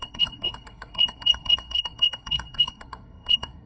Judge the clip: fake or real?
fake